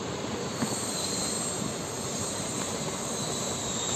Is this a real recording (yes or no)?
no